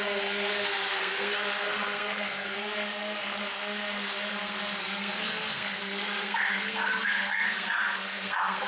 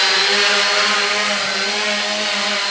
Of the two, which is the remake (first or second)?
first